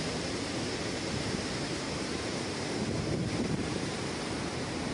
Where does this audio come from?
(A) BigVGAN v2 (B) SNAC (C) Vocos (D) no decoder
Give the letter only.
A